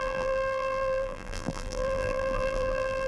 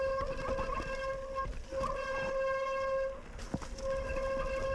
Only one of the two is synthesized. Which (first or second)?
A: first